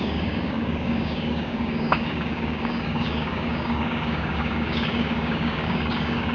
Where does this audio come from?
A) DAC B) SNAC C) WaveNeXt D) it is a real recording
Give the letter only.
A